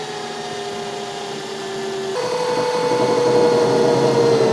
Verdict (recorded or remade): recorded